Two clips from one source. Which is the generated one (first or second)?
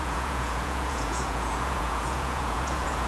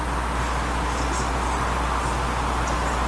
first